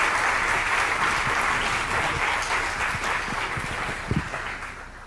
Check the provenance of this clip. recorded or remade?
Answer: recorded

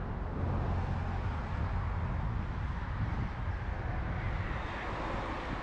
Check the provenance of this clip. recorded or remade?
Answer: recorded